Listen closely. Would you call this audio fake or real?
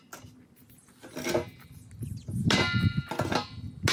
real